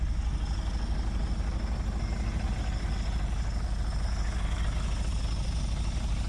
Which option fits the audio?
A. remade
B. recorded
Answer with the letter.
B